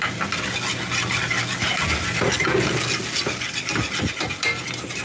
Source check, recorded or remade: recorded